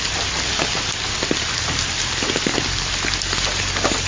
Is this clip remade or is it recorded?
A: recorded